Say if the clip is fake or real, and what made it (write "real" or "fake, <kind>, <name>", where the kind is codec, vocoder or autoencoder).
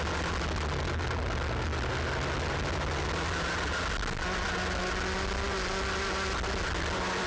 real